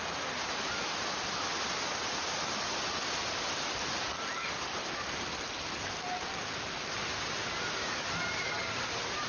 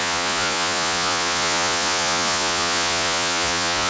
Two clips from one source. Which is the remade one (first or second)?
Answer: second